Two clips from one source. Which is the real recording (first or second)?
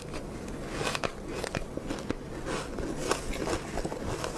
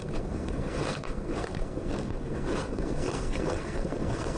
first